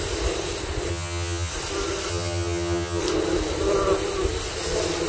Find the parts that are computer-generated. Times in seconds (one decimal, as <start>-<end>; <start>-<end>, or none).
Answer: 0.9-1.5; 2.1-3.0